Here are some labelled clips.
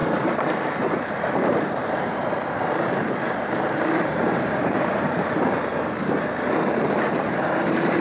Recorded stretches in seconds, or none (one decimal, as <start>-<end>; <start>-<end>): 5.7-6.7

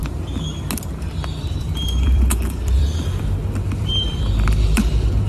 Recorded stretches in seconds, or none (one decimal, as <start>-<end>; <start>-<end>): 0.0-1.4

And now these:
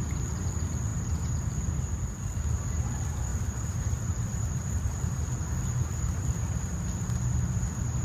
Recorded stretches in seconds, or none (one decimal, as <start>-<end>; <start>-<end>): 0.0-0.9; 1.9-3.3; 5.3-5.8; 6.8-8.0